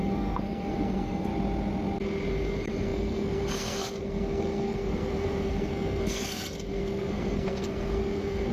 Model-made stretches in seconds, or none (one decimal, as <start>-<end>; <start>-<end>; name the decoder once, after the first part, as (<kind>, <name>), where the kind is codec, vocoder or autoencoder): 0.0-1.3 (codec, SNAC); 2.3-8.5